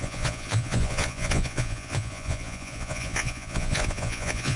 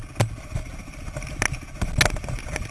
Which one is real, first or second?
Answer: second